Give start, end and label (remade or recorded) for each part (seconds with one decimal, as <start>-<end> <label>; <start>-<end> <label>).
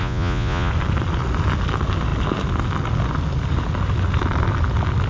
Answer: 0.0-0.7 remade; 0.7-5.1 recorded